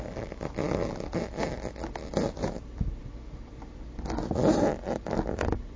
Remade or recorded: recorded